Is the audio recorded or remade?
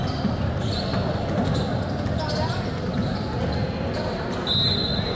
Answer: recorded